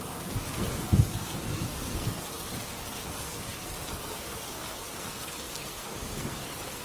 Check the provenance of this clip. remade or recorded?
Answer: remade